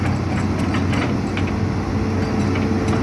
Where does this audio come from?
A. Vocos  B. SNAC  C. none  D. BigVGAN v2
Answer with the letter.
C